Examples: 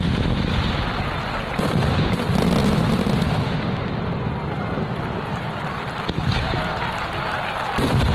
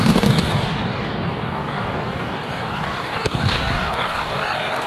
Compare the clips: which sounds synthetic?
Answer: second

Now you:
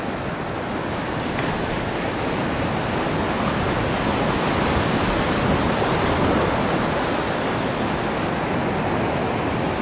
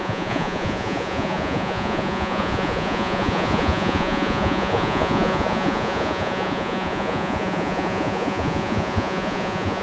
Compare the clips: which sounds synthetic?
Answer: second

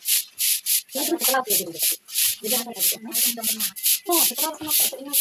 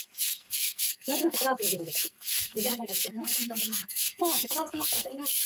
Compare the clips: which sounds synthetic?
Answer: second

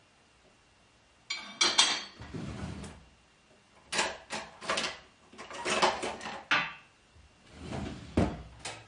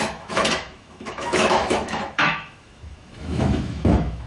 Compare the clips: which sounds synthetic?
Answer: second